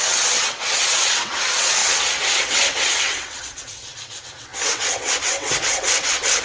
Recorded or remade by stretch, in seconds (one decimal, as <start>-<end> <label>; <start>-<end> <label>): 0.0-6.4 remade